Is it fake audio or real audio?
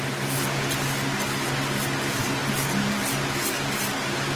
real